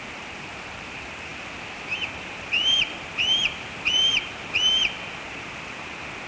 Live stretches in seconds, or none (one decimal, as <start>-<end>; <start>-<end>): 0.0-6.3